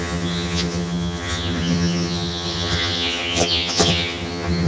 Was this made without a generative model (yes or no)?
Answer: no